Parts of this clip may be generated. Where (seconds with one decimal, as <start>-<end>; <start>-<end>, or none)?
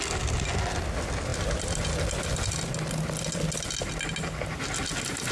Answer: none